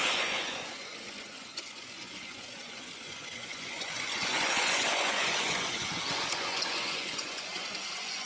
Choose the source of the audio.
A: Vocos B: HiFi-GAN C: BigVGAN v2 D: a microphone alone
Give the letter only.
A